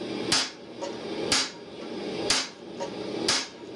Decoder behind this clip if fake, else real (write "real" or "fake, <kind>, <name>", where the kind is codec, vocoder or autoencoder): real